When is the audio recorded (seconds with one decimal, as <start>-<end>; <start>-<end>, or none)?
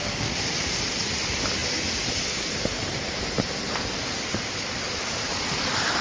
0.0-6.0